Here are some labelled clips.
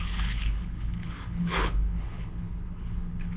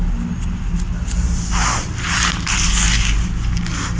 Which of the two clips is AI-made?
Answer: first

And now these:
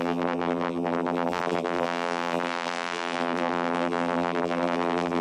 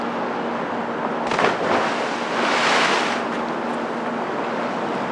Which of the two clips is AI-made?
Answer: first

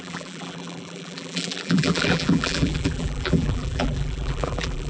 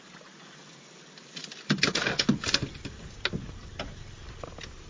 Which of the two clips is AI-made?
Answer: first